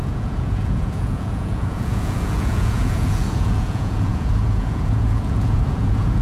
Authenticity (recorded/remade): remade